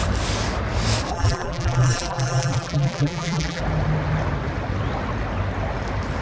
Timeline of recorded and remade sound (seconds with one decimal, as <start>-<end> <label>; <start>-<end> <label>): 0.0-1.1 recorded; 1.1-3.6 remade; 3.6-6.2 recorded